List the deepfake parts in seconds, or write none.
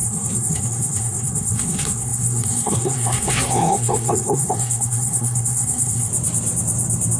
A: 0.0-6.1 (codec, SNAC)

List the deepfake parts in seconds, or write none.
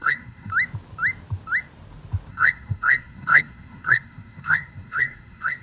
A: 0.0-0.5 (codec, SNAC); 2.3-5.6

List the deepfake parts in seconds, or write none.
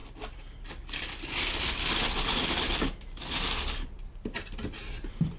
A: none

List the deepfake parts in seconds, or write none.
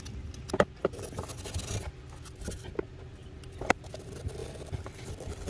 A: none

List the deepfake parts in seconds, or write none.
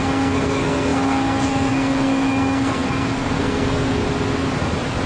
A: 0.0-4.0 (codec, SNAC)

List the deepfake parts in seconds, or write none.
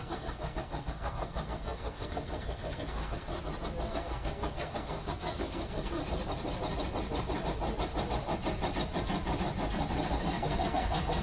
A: 0.0-3.3 (codec, SNAC); 3.9-6.0; 10.2-11.2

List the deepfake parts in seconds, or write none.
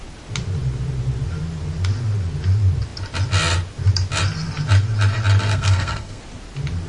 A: 5.5-6.2 (codec, SNAC)